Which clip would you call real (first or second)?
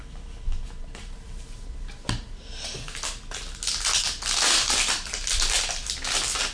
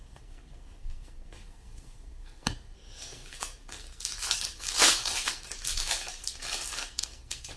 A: first